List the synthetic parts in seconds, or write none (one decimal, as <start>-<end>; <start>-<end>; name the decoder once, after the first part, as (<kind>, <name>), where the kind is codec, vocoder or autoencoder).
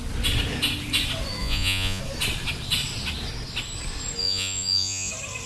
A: 1.4-2.0 (vocoder, Vocos); 4.2-5.1